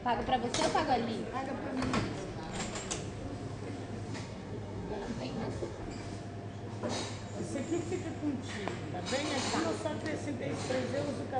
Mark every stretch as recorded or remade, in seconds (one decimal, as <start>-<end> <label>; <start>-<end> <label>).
0.0-4.1 recorded; 4.1-5.8 remade; 5.8-11.4 recorded